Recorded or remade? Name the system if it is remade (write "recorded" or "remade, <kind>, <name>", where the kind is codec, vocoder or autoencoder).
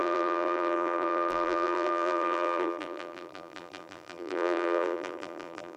remade, vocoder, BigVGAN v2